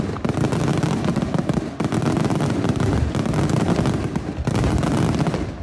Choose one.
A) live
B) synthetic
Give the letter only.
A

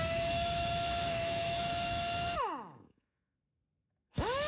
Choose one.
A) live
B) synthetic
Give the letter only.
B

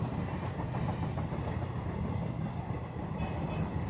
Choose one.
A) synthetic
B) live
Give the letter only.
B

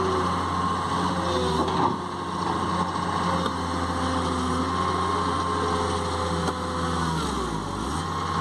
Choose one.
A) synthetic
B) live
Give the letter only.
B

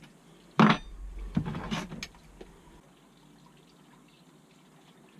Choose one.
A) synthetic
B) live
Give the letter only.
B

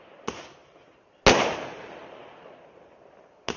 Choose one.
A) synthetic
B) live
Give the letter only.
B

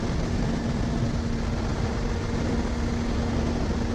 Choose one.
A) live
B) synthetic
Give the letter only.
A